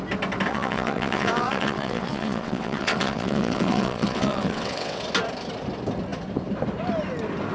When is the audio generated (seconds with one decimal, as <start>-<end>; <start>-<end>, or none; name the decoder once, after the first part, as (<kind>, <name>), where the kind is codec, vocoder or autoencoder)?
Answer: 0.5-5.0 (vocoder, WaveNeXt)